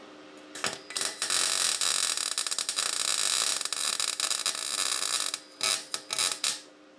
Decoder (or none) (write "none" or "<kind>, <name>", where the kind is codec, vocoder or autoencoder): none